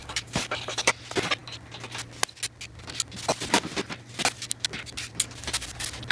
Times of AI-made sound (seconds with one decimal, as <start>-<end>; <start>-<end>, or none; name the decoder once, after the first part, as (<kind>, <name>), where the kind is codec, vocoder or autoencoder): 0.0-0.9 (codec, DAC)